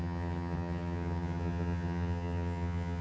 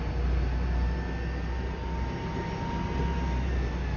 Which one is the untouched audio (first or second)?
second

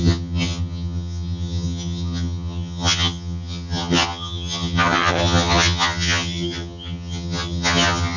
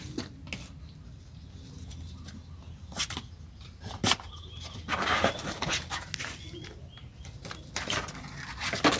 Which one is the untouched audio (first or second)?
second